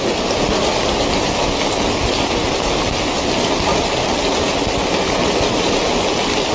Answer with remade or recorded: recorded